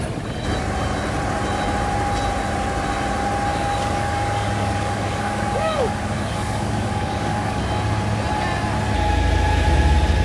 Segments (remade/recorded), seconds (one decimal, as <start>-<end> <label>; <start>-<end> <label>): 0.0-3.5 recorded; 3.5-7.6 remade; 7.6-10.2 recorded